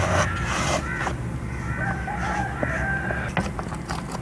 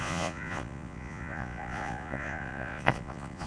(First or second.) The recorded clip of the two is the first